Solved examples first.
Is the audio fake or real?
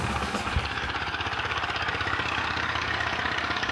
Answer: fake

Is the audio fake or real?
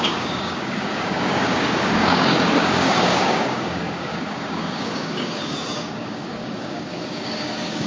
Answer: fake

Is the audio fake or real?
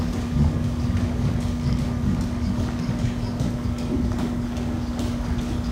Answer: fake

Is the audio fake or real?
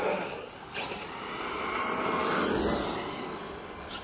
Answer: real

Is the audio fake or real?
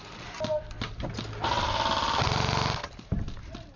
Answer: real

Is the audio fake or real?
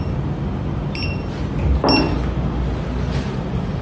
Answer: real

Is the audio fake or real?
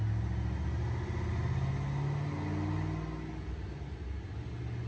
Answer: real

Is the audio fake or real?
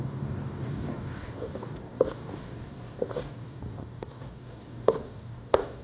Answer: fake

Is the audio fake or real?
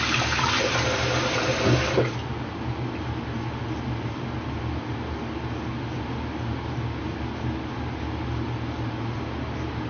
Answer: real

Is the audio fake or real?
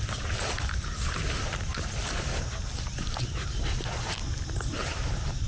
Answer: real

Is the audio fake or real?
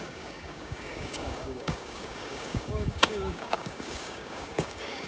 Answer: fake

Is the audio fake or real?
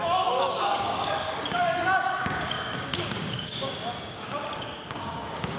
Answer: fake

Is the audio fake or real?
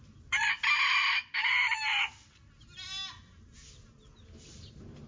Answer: real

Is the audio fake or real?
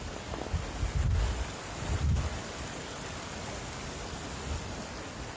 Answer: real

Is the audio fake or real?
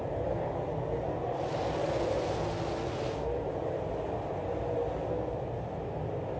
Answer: real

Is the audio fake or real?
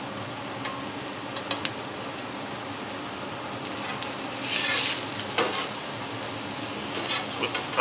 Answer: real